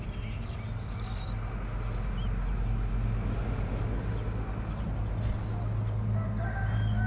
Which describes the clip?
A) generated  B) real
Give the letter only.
B